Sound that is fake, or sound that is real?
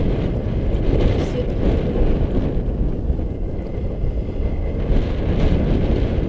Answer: real